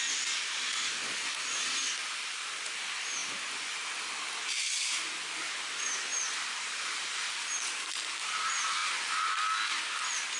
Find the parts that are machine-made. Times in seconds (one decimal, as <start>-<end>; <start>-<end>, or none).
none